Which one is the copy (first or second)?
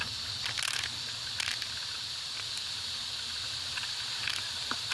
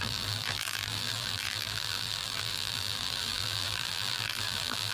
second